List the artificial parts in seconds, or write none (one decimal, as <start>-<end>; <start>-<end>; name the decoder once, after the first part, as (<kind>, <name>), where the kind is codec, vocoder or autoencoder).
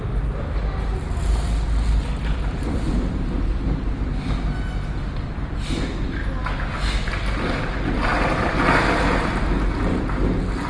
none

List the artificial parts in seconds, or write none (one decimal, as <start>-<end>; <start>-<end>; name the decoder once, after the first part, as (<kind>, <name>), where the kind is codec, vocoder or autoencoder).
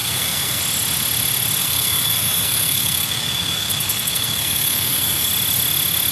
0.0-0.6 (codec, SNAC); 1.6-5.3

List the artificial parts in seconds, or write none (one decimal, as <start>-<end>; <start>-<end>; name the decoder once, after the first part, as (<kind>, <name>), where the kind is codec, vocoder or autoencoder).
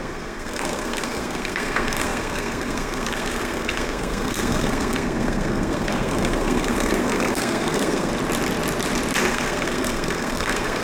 0.0-8.1 (codec, SNAC); 9.3-10.8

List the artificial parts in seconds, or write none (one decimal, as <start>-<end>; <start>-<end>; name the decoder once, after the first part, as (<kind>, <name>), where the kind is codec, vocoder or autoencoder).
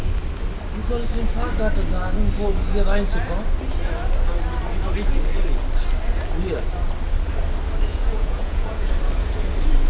7.9-8.9 (vocoder, Vocos)